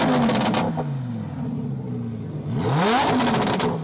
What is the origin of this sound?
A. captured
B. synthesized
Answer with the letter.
A